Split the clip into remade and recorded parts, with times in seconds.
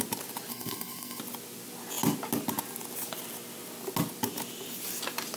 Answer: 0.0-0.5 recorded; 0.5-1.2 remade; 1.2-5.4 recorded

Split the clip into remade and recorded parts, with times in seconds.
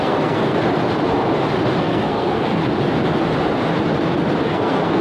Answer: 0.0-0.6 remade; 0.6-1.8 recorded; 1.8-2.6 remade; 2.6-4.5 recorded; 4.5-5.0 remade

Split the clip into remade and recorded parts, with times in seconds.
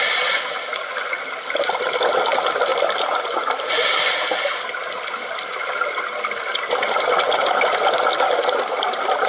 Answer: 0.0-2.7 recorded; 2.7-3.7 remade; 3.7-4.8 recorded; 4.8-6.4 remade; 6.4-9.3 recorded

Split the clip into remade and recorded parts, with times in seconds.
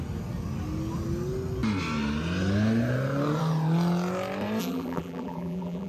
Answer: 0.0-4.6 recorded; 4.6-5.9 remade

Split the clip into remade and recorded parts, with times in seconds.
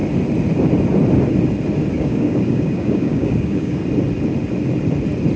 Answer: 0.0-1.9 recorded; 1.9-3.8 remade; 3.8-5.4 recorded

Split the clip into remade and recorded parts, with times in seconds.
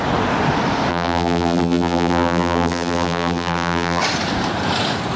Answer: 0.0-0.9 recorded; 0.9-4.0 remade; 4.0-5.2 recorded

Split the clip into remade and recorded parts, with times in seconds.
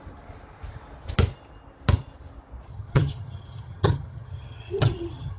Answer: 0.0-2.7 recorded; 2.7-5.4 remade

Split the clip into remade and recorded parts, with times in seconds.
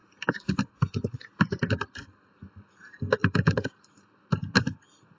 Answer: 0.0-2.4 remade; 2.4-3.2 recorded; 3.2-4.2 remade; 4.2-5.2 recorded